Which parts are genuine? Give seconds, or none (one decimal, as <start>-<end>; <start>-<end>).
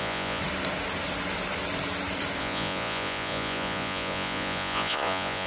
0.4-2.4